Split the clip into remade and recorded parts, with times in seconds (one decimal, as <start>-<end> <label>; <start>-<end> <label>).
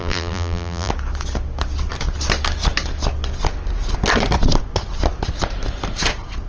0.0-0.9 remade; 0.9-6.5 recorded